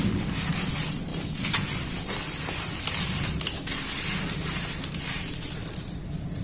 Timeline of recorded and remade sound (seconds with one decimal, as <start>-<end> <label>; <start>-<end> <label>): 0.0-6.4 recorded